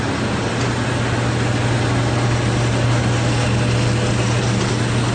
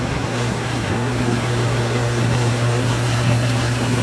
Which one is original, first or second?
first